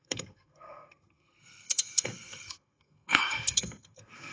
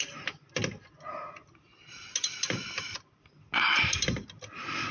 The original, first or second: second